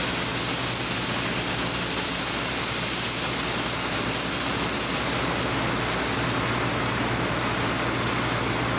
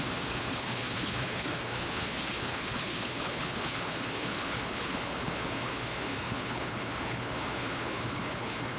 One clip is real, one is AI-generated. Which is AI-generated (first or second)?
second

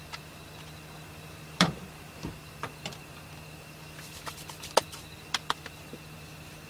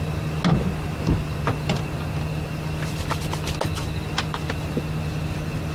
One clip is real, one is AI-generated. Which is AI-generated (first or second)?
first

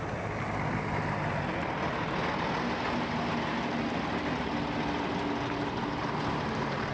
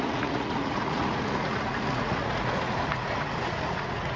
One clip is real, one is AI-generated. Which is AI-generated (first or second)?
second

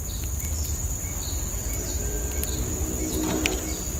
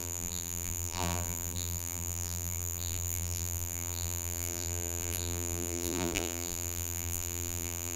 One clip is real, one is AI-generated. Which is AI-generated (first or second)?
second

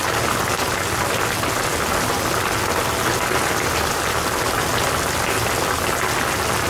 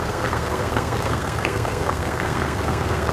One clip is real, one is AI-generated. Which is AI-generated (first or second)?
second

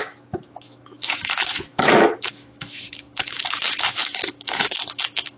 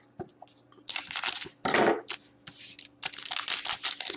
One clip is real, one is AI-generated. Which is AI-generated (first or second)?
first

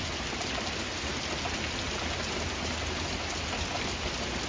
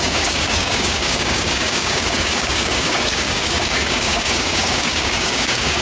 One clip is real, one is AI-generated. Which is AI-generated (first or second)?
second